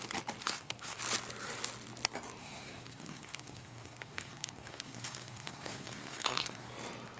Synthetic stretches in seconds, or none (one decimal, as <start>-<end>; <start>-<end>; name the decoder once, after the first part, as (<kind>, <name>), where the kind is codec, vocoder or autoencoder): 0.4-1.0 (codec, SNAC); 2.4-6.7